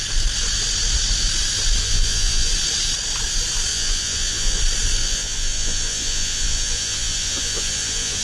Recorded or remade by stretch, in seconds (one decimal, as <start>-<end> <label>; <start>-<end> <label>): 0.0-1.8 recorded; 1.8-2.5 remade; 2.5-3.7 recorded; 3.7-4.6 remade; 4.6-5.0 recorded; 5.0-8.2 remade